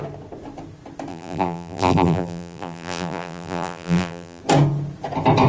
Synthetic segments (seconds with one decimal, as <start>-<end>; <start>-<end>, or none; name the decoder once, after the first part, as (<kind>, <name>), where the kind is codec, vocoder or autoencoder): 1.1-4.4 (vocoder, BigVGAN v2)